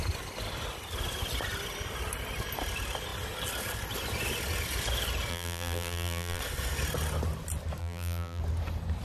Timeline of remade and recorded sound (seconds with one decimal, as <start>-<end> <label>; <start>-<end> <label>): 0.0-5.3 recorded; 5.3-6.4 remade; 6.4-7.8 recorded; 7.8-8.4 remade; 8.4-9.0 recorded